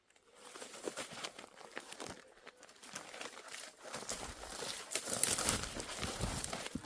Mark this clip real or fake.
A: fake